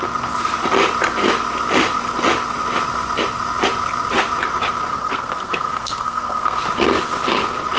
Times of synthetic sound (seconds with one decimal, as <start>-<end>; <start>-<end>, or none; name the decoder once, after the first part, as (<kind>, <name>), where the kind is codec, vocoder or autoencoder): 4.9-6.6 (codec, SNAC)